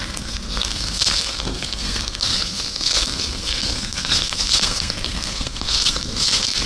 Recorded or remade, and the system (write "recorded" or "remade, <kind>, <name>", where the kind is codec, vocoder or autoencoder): remade, codec, SNAC